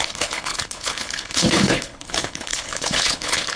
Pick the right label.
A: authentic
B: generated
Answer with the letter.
B